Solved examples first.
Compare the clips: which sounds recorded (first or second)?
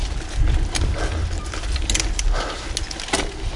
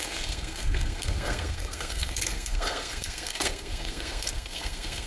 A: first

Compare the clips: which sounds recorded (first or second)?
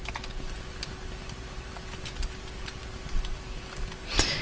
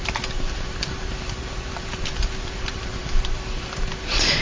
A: first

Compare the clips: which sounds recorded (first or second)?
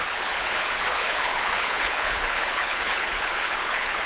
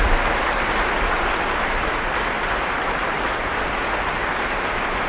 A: second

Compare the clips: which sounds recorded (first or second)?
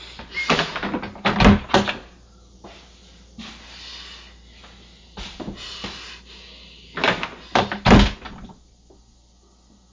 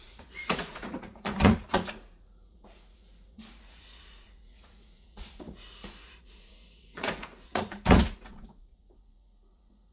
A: first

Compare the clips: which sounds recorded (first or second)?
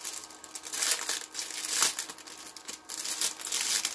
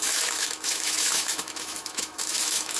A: first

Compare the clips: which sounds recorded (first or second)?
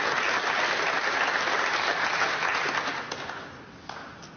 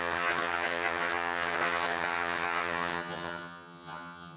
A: first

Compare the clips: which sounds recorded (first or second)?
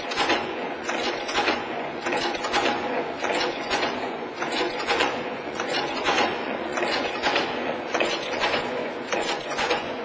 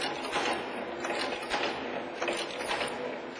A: second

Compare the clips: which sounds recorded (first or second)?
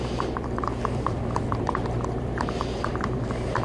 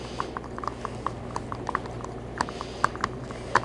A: second